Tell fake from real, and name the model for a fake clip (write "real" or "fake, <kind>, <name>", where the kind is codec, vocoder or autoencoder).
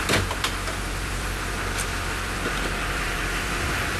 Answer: fake, vocoder, BigVGAN v2